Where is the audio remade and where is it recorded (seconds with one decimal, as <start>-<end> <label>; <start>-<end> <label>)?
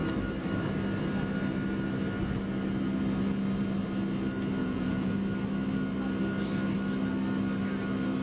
0.0-4.6 recorded; 4.6-5.1 remade; 5.1-8.2 recorded